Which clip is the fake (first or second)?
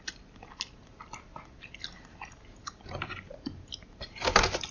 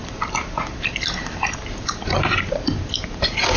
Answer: second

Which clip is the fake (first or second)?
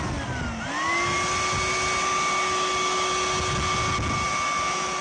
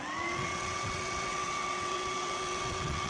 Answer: second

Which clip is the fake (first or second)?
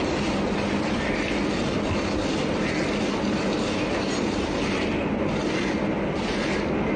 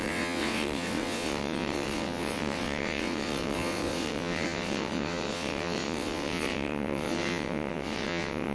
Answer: second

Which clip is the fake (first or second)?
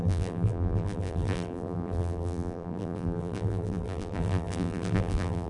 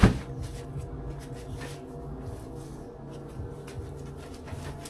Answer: first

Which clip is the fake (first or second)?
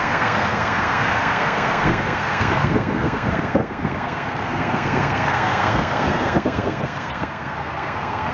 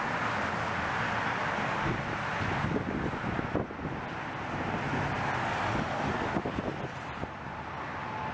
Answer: first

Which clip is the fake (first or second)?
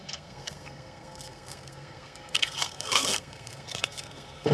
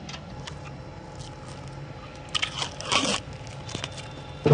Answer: first